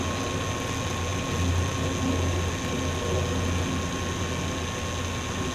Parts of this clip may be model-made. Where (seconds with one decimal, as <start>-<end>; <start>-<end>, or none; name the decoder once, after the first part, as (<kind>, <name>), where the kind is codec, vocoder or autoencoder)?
none